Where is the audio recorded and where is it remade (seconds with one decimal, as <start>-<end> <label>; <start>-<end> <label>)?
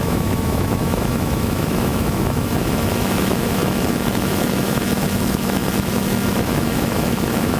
0.0-7.6 remade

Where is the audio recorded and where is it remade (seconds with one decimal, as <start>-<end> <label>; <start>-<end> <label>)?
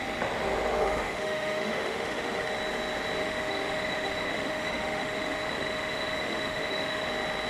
0.0-0.8 recorded; 0.8-2.5 remade; 2.5-3.2 recorded; 3.2-7.1 remade; 7.1-7.5 recorded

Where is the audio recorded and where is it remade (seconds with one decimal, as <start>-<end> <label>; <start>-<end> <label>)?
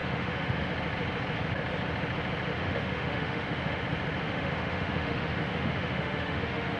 0.0-0.7 remade; 0.7-2.5 recorded; 2.5-3.8 remade; 3.8-4.2 recorded; 4.2-6.8 remade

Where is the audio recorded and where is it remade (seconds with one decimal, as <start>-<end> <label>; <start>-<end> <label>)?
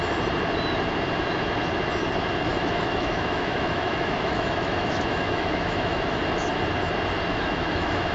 0.0-2.5 recorded; 2.5-6.2 remade; 6.2-7.3 recorded; 7.3-8.1 remade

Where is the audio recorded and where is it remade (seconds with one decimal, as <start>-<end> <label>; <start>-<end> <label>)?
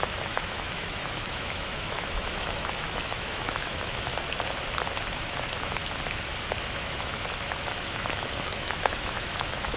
0.0-4.1 remade; 4.1-5.1 recorded; 5.1-5.8 remade; 5.8-6.6 recorded; 6.6-9.8 remade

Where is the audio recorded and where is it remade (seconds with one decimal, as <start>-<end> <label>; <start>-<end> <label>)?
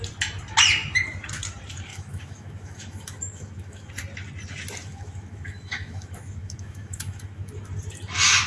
0.0-1.9 recorded; 1.9-3.9 remade; 3.9-4.8 recorded; 4.8-7.6 remade; 7.6-8.5 recorded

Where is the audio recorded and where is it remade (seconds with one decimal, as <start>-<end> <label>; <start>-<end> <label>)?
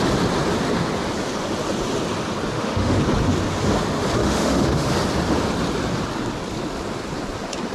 0.0-2.5 recorded; 2.5-3.0 remade; 3.0-4.2 recorded; 4.2-4.9 remade; 4.9-7.7 recorded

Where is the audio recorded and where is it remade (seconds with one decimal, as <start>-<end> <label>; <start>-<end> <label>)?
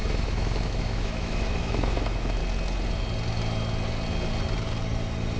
0.0-2.4 remade; 2.4-5.4 recorded